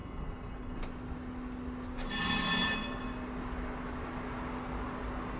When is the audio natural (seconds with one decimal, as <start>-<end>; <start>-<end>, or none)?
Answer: 0.8-5.4